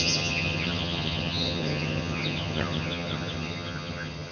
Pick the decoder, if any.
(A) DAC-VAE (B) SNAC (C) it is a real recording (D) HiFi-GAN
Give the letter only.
D